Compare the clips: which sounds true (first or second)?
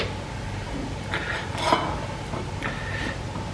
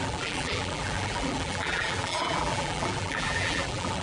first